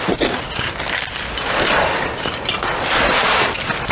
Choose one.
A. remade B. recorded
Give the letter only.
B